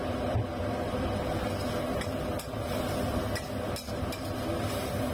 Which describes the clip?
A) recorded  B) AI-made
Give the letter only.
A